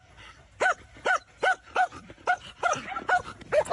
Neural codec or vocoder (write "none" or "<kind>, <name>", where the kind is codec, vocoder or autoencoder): none